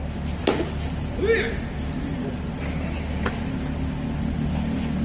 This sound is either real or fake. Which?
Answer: real